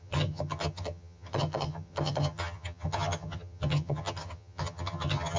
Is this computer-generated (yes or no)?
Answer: yes